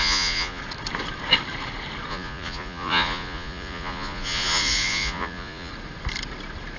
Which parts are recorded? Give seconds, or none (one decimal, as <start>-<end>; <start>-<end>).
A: 0.6-2.1; 5.7-6.8